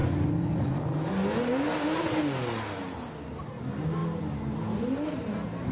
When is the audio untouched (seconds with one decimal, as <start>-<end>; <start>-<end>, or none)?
0.0-5.7